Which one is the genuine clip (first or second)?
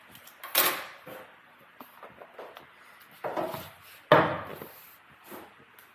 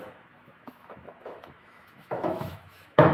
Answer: first